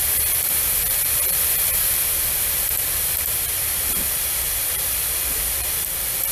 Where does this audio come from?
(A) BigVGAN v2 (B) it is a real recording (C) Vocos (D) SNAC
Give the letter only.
A